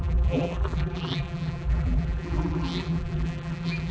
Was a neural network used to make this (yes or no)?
yes